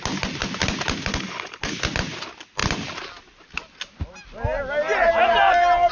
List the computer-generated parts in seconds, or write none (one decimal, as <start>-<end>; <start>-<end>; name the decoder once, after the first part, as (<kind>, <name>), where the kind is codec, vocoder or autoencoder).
1.1-1.7 (codec, HILCodec)